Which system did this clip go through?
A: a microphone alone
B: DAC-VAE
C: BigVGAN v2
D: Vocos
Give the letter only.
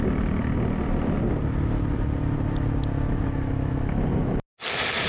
A